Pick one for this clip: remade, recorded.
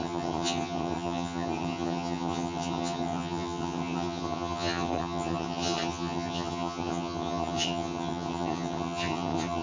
remade